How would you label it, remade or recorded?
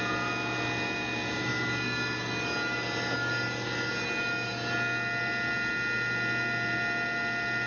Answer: recorded